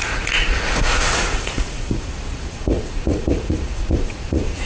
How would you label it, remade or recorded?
remade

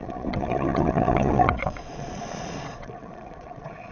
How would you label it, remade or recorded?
remade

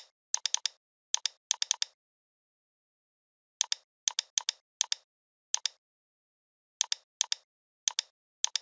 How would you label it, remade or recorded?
recorded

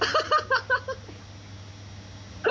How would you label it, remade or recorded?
recorded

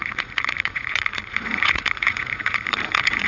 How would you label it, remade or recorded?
remade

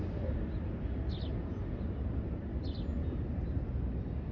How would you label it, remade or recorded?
recorded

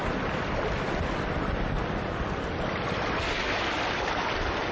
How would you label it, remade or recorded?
recorded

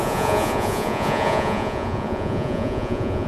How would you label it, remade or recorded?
remade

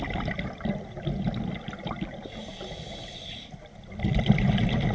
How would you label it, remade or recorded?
recorded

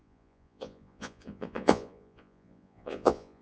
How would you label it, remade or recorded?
remade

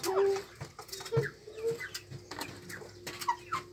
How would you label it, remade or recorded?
recorded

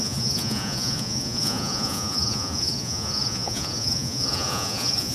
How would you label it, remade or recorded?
remade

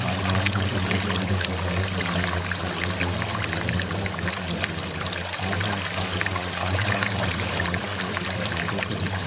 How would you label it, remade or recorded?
recorded